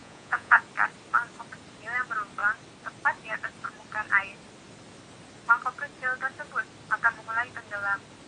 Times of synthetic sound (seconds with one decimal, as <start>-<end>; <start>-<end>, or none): 0.0-0.6